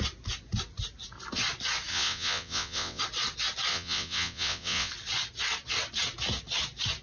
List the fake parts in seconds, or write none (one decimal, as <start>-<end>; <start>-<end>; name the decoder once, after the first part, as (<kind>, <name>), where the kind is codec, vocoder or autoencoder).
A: 1.9-3.0 (vocoder, WaveNeXt); 3.7-4.9